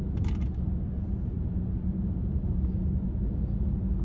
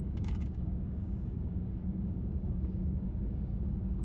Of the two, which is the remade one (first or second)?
second